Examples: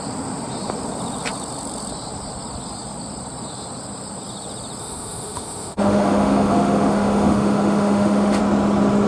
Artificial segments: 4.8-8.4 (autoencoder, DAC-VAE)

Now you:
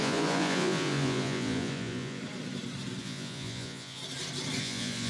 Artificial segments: 0.0-2.2 (vocoder, Vocos); 3.0-4.0; 4.6-5.1

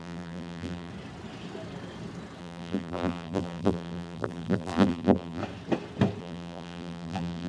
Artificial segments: 0.0-0.9 (vocoder, BigVGAN v2); 2.4-5.4; 6.2-7.5

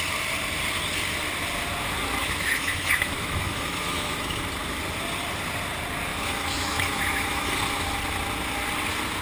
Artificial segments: 2.2-4.4 (autoencoder, DAC-VAE); 6.1-7.5